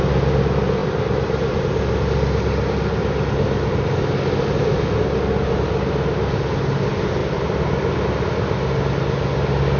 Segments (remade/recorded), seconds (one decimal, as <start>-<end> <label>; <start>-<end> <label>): 0.0-7.2 recorded; 7.2-7.9 remade; 7.9-9.8 recorded